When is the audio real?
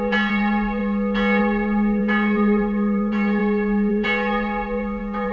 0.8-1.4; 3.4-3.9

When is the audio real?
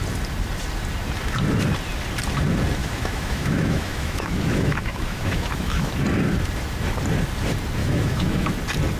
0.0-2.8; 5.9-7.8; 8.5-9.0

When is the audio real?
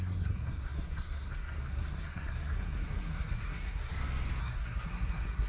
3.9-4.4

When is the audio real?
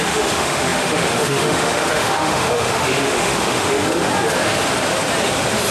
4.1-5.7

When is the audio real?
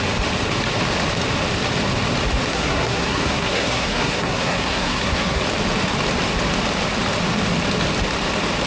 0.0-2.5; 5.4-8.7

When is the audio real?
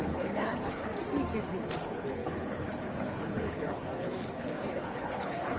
0.9-1.4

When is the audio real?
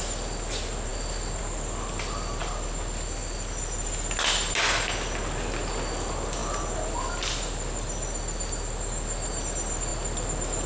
0.0-10.7